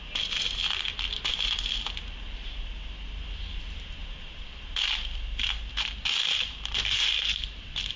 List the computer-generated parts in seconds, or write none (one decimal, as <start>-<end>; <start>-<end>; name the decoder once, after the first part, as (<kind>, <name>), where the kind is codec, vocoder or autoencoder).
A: none